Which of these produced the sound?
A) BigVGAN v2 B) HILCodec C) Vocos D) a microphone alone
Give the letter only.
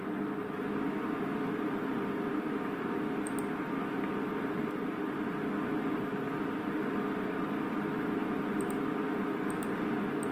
D